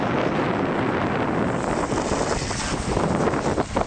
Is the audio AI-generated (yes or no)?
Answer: no